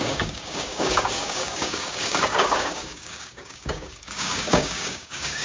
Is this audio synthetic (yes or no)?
yes